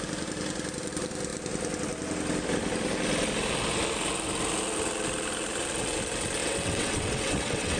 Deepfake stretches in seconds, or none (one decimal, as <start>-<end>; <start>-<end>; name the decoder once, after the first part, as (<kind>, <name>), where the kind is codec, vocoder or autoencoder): 6.4-7.8 (vocoder, WaveNeXt)